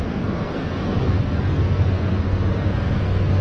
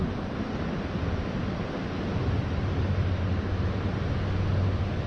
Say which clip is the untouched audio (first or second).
second